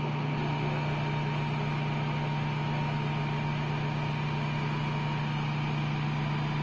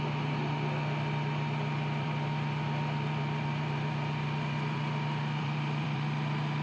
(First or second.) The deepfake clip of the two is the second